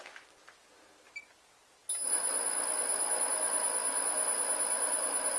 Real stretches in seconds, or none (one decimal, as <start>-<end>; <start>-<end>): 0.0-5.4